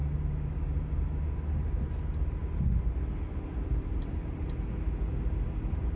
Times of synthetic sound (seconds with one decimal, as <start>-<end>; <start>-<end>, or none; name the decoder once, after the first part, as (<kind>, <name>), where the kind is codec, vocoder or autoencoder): none